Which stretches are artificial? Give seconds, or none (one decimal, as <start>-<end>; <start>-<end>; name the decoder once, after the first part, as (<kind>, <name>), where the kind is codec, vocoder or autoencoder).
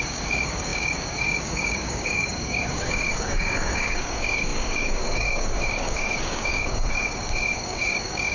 0.0-8.3 (codec, DAC)